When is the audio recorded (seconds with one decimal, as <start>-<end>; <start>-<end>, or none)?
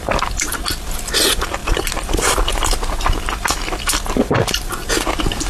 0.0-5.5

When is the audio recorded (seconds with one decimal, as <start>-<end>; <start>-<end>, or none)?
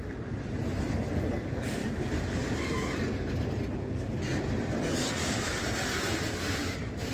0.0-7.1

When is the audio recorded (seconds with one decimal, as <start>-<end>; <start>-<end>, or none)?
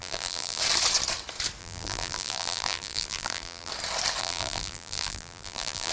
0.6-1.6; 3.7-4.2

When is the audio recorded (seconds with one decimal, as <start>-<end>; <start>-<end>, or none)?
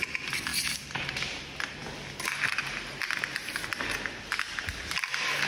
0.0-0.5; 1.4-5.5